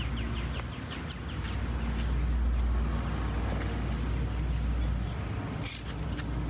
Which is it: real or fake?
real